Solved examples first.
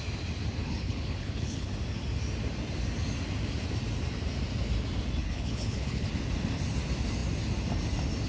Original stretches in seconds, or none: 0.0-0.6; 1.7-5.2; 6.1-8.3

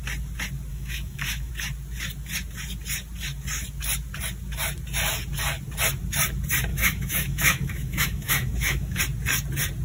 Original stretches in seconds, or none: 0.0-0.7; 1.5-6.7; 9.0-9.8